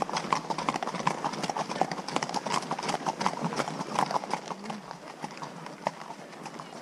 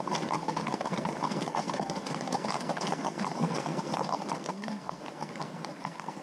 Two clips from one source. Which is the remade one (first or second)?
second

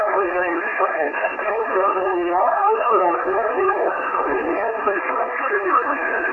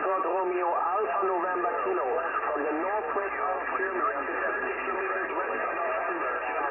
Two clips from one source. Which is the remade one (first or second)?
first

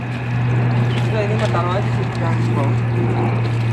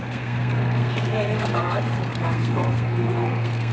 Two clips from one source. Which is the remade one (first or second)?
second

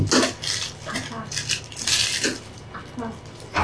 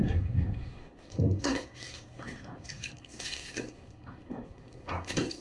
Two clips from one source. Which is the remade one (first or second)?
second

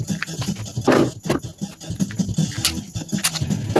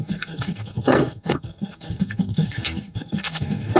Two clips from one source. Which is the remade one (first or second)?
second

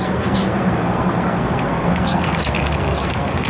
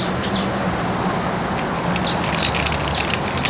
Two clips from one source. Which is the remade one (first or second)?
first